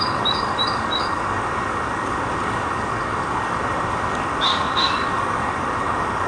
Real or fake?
fake